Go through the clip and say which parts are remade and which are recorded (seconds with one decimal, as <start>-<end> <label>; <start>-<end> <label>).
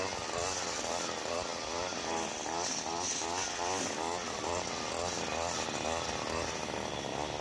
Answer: 0.0-7.4 recorded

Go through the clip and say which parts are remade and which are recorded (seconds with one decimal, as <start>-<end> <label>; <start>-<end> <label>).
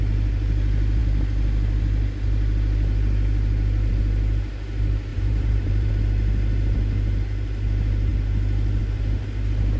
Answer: 0.0-5.1 recorded; 5.1-5.9 remade; 5.9-9.8 recorded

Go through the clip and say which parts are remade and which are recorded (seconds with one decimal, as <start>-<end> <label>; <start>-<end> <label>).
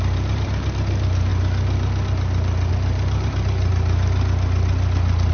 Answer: 0.0-1.3 remade; 1.3-2.7 recorded; 2.7-3.7 remade; 3.7-5.3 recorded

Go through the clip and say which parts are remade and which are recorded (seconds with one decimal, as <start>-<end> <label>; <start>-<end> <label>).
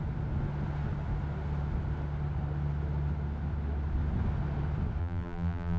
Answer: 0.0-5.0 recorded; 5.0-5.8 remade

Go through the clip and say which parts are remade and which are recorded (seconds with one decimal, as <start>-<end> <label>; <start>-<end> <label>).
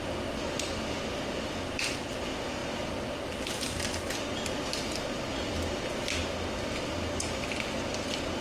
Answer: 0.0-2.6 recorded; 2.6-3.6 remade; 3.6-8.4 recorded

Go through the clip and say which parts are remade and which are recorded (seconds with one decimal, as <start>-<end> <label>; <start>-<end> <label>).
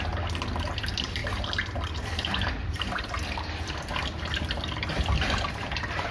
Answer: 0.0-1.2 recorded; 1.2-4.9 remade; 4.9-6.1 recorded